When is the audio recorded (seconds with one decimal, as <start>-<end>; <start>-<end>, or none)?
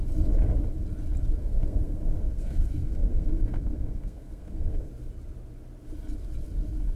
0.0-1.4; 4.9-7.0